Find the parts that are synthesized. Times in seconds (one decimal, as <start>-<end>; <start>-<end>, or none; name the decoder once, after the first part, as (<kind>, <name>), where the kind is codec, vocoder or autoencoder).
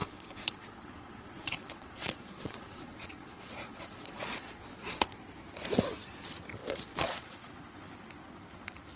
0.0-5.2 (vocoder, Vocos); 6.6-7.5